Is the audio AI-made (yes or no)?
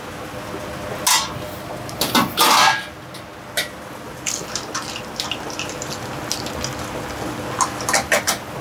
no